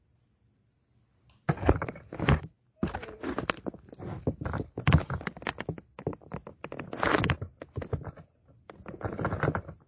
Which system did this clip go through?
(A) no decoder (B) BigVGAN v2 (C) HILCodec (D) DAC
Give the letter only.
A